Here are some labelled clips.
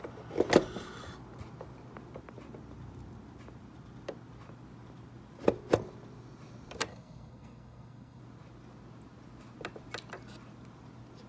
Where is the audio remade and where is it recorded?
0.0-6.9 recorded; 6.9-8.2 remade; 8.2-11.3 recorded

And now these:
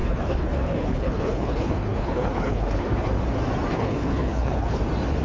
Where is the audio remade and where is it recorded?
0.0-3.1 remade; 3.1-3.7 recorded; 3.7-4.8 remade; 4.8-5.2 recorded

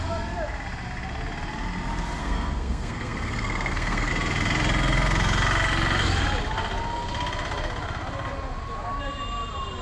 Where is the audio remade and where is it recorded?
0.0-2.2 recorded; 2.2-4.1 remade; 4.1-9.8 recorded

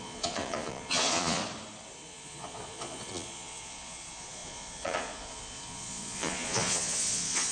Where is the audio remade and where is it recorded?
0.0-1.4 remade; 1.4-2.1 recorded; 2.1-7.5 remade

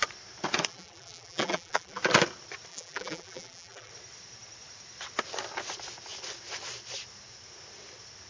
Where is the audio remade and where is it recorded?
0.0-0.7 recorded; 0.7-2.0 remade; 2.0-2.7 recorded; 2.7-3.9 remade; 3.9-8.3 recorded

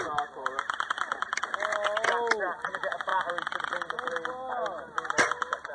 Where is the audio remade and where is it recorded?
0.0-5.7 recorded